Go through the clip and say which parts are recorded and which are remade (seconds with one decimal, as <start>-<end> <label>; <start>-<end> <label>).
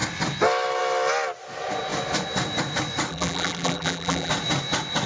0.0-3.1 recorded; 3.1-4.3 remade; 4.3-5.1 recorded